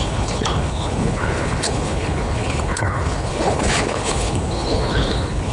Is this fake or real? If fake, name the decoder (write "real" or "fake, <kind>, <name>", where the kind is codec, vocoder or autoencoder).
fake, codec, HILCodec